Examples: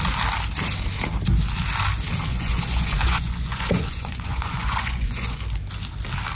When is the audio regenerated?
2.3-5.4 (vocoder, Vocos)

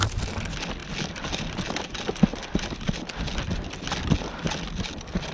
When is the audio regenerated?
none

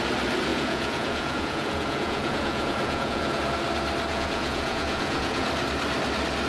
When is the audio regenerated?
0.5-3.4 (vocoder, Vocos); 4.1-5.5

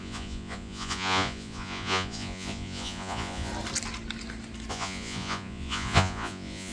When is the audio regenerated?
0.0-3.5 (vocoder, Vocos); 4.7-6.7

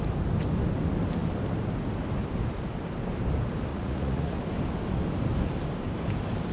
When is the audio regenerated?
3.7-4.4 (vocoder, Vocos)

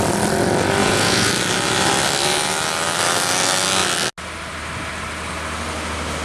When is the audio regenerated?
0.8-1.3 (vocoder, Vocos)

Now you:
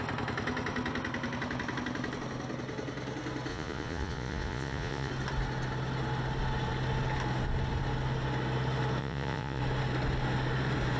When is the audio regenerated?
3.5-5.1 (vocoder, Vocos); 9.0-9.6